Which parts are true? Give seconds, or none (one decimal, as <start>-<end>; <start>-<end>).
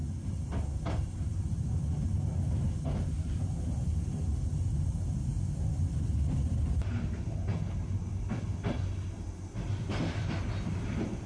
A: 0.0-11.3